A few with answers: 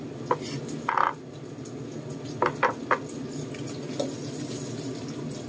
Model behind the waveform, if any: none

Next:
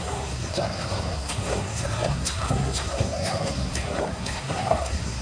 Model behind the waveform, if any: codec, SNAC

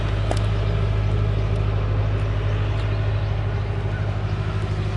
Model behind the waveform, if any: none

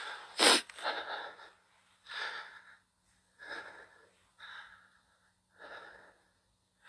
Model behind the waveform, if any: none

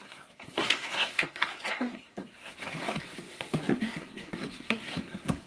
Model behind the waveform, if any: codec, SNAC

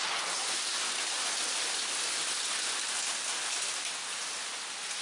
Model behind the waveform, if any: none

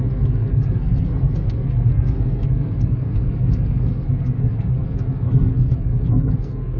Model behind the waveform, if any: codec, SNAC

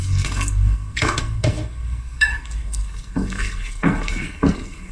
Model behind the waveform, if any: codec, SNAC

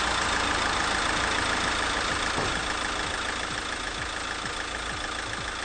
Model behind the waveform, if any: none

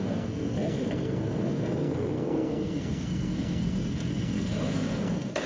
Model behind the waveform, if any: codec, SNAC